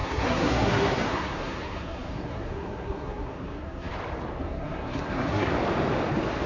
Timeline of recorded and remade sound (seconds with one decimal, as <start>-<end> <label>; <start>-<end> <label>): 0.0-3.9 remade; 3.9-4.4 recorded; 4.4-5.5 remade; 5.5-6.5 recorded